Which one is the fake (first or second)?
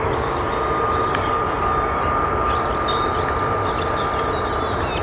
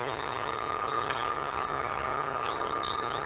second